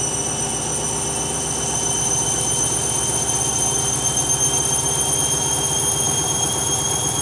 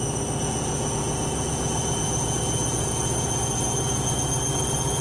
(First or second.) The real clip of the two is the first